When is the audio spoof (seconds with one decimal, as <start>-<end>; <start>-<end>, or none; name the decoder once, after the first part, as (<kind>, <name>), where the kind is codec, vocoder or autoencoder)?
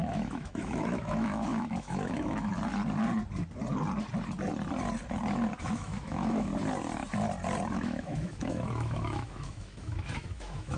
0.0-2.5 (autoencoder, DAC-VAE); 5.6-6.5; 7.7-10.8